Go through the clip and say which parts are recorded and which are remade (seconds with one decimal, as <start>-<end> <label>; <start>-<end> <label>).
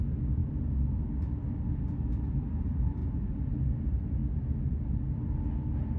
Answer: 0.0-6.0 recorded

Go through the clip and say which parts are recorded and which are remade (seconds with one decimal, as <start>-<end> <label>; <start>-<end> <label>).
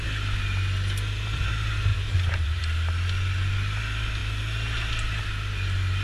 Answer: 0.0-1.9 recorded; 1.9-2.6 remade; 2.6-6.0 recorded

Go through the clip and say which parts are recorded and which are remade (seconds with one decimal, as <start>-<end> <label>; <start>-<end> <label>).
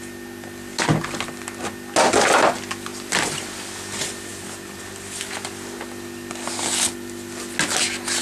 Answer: 0.0-2.9 recorded; 2.9-3.8 remade; 3.8-8.2 recorded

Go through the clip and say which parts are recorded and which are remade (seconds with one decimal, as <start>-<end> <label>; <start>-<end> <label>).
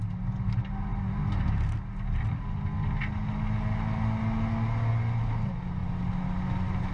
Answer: 0.0-6.9 recorded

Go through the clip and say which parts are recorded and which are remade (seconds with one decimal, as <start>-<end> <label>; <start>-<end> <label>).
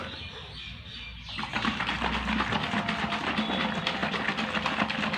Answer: 0.0-5.2 recorded